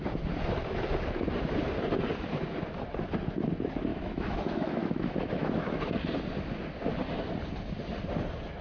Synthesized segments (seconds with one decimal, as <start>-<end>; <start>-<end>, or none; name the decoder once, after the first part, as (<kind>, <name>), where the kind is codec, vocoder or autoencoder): 3.9-5.8 (autoencoder, DAC-VAE)